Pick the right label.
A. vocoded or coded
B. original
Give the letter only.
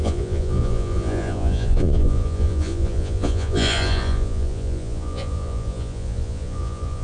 A